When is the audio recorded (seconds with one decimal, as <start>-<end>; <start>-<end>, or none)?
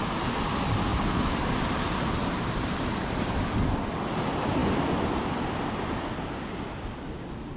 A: 0.0-2.2; 3.3-7.6